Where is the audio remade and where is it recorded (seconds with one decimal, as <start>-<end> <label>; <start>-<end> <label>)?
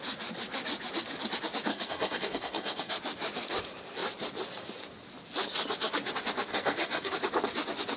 0.0-1.7 recorded; 1.7-2.9 remade; 2.9-6.5 recorded; 6.5-7.1 remade; 7.1-8.0 recorded